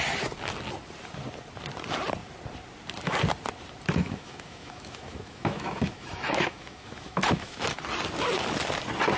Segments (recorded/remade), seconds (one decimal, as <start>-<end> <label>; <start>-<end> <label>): 0.0-4.0 recorded; 4.0-7.8 remade; 7.8-9.2 recorded